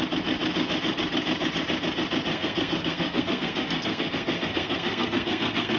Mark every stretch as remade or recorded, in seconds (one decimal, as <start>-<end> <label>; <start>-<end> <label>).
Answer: 0.0-2.3 recorded; 2.3-5.8 remade